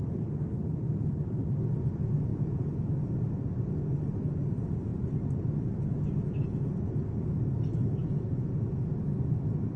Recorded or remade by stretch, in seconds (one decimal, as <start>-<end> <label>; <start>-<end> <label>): 0.0-2.3 recorded; 2.3-2.9 remade; 2.9-8.0 recorded; 8.0-8.9 remade; 8.9-9.8 recorded